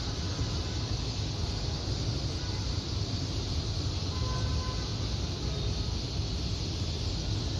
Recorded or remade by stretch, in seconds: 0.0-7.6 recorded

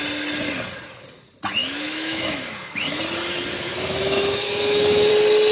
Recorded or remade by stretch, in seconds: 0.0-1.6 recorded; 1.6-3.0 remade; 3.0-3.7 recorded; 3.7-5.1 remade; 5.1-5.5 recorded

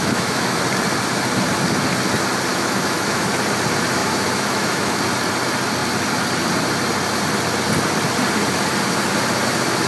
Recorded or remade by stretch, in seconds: 0.0-0.6 remade; 0.6-2.5 recorded; 2.5-3.3 remade; 3.3-4.0 recorded; 4.0-5.0 remade; 5.0-9.9 recorded

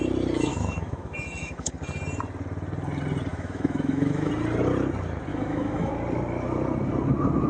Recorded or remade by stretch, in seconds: 0.0-0.5 recorded; 0.5-1.7 remade; 1.7-3.3 recorded; 3.3-4.3 remade; 4.3-5.3 recorded; 5.3-5.9 remade; 5.9-7.5 recorded

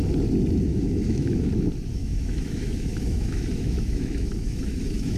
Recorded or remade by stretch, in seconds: 0.0-0.7 recorded; 0.7-1.5 remade; 1.5-2.0 recorded; 2.0-5.2 remade